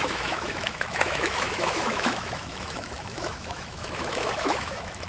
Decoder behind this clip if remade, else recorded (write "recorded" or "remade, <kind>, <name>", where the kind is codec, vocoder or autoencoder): remade, autoencoder, DAC-VAE